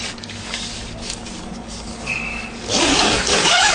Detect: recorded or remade remade